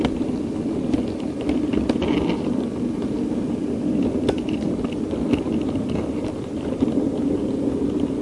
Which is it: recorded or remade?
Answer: recorded